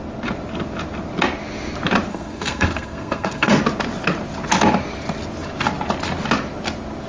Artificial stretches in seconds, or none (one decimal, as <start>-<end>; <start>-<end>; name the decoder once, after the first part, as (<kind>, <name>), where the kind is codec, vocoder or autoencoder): 2.1-3.6 (codec, SNAC)

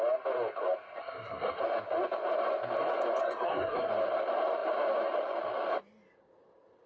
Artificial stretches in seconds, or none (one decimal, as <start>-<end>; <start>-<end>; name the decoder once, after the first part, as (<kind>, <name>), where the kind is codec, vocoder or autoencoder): 1.0-1.6 (codec, SNAC); 3.2-3.9